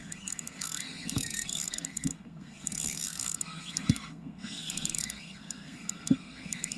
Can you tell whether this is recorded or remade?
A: remade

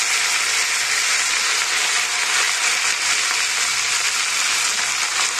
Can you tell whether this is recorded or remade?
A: recorded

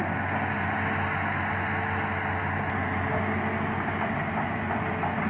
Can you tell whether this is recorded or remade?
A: recorded